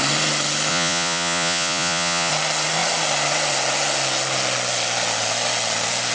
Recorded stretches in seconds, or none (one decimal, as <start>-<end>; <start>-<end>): 0.0-0.7; 2.3-6.1